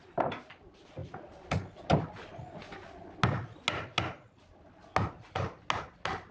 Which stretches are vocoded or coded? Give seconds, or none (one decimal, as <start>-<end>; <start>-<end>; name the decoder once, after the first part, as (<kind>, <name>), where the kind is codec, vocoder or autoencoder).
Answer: none